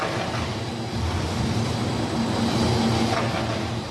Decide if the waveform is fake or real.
real